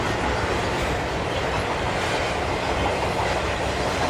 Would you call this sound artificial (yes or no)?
no